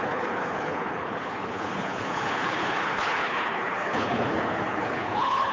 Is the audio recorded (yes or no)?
no